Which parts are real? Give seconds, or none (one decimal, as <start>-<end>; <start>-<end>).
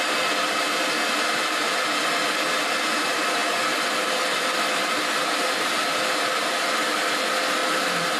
0.0-8.2